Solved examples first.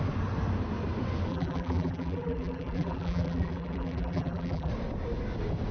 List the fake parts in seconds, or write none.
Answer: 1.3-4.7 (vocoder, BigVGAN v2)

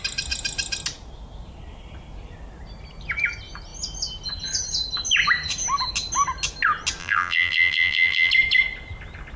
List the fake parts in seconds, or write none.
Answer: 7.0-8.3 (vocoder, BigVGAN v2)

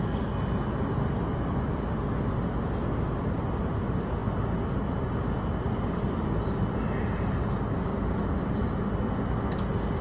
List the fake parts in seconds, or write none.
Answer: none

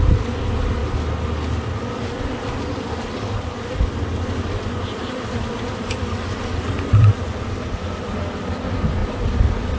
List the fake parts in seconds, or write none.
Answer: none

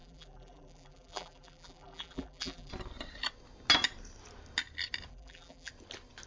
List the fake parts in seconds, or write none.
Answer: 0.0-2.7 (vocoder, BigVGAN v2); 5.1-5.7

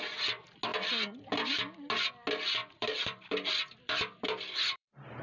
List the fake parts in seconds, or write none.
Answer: 2.6-5.2 (vocoder, BigVGAN v2)

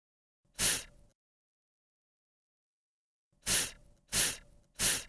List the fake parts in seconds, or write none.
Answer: none

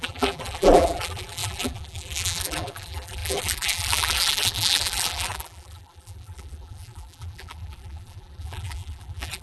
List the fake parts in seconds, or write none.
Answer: 0.0-9.4 (vocoder, BigVGAN v2)